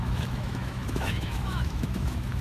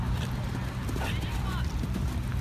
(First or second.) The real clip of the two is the second